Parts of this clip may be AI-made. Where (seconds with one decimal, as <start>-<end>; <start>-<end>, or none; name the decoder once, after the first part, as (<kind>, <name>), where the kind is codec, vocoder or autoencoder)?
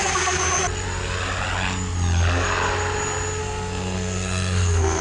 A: 0.0-0.4 (codec, SNAC); 3.4-5.0